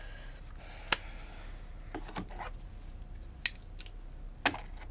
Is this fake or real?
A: real